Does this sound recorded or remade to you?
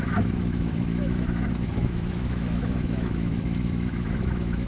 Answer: remade